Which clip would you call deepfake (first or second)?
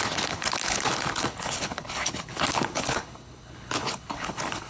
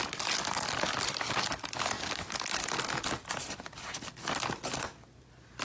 first